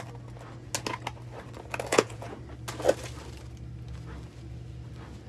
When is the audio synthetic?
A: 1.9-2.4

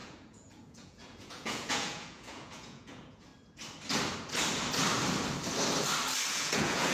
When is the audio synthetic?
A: 0.0-3.3; 6.3-6.9